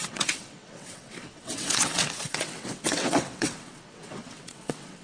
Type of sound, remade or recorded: remade